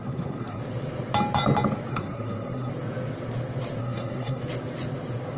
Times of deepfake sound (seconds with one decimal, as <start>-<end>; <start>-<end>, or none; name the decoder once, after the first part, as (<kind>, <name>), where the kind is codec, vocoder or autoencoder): 0.0-0.6 (codec, SNAC); 1.9-2.7; 3.8-4.4